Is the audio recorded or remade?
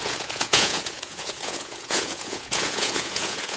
remade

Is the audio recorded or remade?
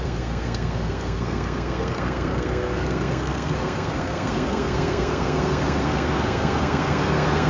remade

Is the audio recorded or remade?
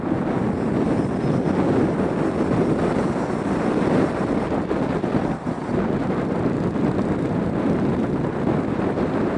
recorded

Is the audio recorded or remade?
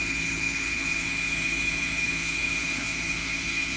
remade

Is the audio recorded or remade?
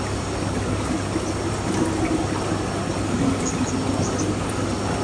recorded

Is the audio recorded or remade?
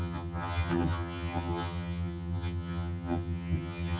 remade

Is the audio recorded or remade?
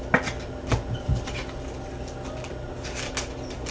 recorded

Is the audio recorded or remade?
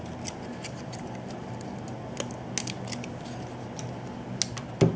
recorded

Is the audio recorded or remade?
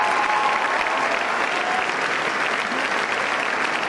recorded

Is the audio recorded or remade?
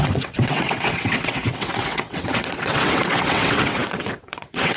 remade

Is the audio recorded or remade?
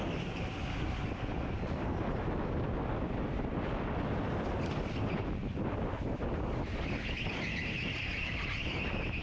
recorded